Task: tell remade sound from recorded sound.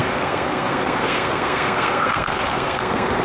remade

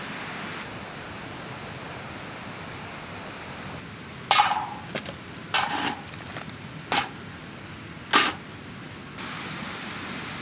recorded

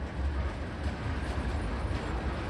recorded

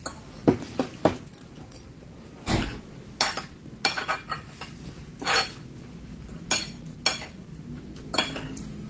recorded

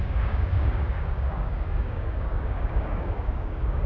remade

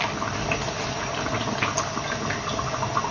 recorded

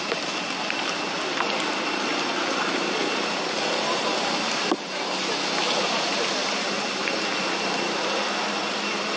recorded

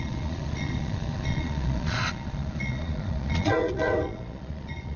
remade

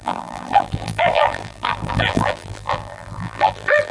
remade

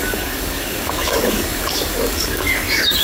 remade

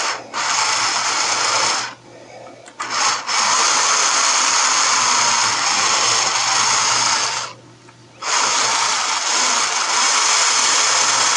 recorded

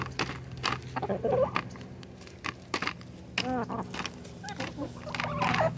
recorded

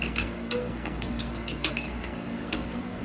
remade